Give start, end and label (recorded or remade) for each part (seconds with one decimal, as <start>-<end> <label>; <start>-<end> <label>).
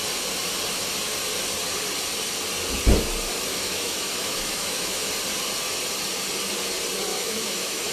0.0-3.5 recorded; 3.5-5.1 remade; 5.1-7.1 recorded; 7.1-7.9 remade